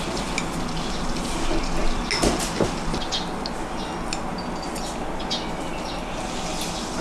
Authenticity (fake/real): real